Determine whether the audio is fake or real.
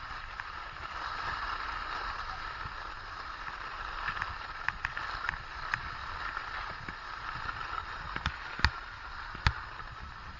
real